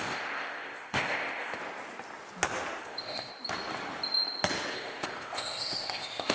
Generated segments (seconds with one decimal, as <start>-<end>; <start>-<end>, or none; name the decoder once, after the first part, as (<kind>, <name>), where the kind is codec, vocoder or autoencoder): 0.0-1.6 (codec, ZipCodec); 2.8-3.3; 4.7-6.3